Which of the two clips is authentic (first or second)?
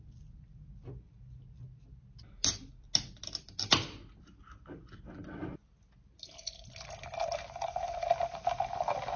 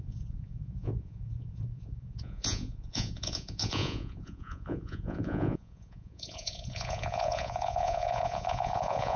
first